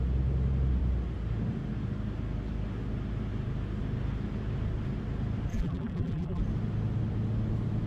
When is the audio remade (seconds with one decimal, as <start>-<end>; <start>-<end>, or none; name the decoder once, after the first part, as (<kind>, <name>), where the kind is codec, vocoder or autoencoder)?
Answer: 5.5-6.4 (vocoder, BigVGAN v2)